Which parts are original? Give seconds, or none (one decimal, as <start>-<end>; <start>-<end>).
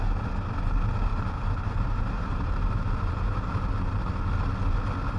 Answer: 0.0-1.1; 4.2-5.2